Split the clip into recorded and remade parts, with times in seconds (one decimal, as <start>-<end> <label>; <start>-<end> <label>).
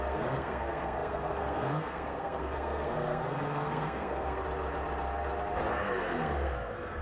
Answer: 0.0-4.4 remade; 4.4-5.7 recorded; 5.7-7.0 remade